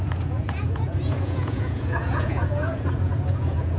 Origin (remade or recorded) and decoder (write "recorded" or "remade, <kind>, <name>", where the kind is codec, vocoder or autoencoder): remade, vocoder, Vocos